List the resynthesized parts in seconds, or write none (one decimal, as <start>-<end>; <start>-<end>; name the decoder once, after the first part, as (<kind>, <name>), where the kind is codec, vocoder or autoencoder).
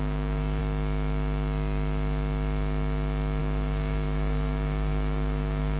0.0-0.6 (codec, DAC); 3.4-5.8